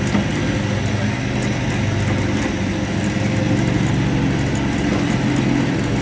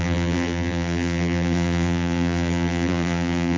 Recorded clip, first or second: first